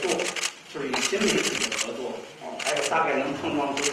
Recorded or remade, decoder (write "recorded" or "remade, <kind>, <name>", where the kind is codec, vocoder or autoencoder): recorded